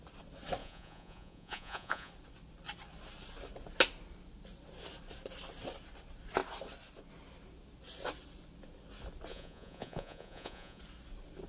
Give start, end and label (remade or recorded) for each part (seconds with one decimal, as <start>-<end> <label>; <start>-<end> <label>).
0.0-0.6 recorded; 0.6-2.1 remade; 2.1-9.3 recorded; 9.3-10.8 remade; 10.8-11.5 recorded